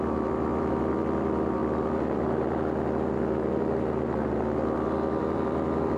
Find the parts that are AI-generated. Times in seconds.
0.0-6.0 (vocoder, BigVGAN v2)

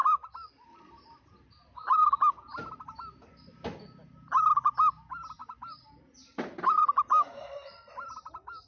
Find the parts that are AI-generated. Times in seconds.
0.0-1.2 (vocoder, BigVGAN v2); 5.4-7.9

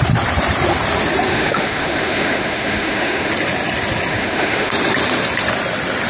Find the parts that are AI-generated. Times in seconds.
1.3-3.3 (autoencoder, DAC-VAE); 4.1-4.7

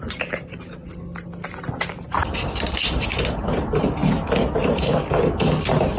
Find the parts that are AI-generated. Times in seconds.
none

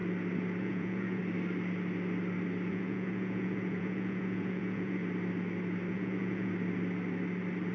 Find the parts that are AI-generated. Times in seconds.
0.6-1.2 (vocoder, Vocos); 2.7-5.0; 5.9-6.5

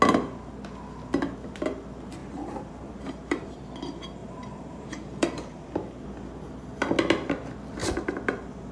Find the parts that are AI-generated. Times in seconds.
2.2-3.6 (vocoder, BigVGAN v2); 4.2-5.7; 7.8-8.7